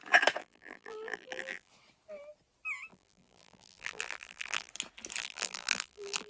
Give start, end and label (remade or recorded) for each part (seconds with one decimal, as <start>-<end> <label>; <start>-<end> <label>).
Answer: 0.0-0.4 recorded; 0.4-1.7 remade; 1.7-2.9 recorded; 2.9-4.7 remade; 4.7-5.2 recorded; 5.2-6.3 remade